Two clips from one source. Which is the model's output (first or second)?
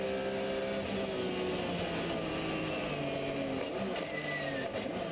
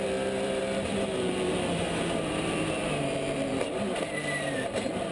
second